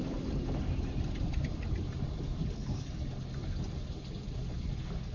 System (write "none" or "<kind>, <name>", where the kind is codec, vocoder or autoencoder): none